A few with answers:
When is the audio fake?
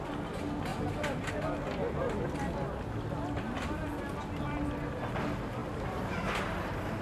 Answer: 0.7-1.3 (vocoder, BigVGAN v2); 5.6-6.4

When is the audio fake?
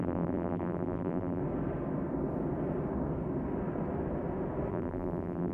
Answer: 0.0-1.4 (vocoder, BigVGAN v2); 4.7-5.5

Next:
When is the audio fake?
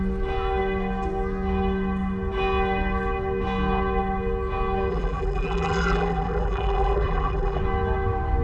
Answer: 4.9-7.6 (vocoder, BigVGAN v2)